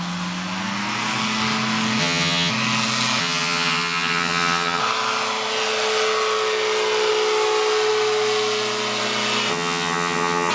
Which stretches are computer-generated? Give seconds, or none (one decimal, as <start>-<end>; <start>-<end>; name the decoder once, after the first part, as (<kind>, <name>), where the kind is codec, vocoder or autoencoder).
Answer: 2.0-2.5 (vocoder, HiFi-GAN); 3.2-4.8; 9.5-10.5